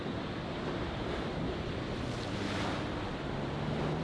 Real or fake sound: real